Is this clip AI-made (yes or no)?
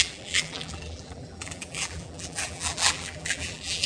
yes